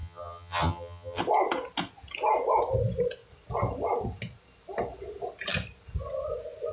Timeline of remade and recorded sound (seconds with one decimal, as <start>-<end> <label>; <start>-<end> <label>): 0.0-1.2 remade; 1.2-6.7 recorded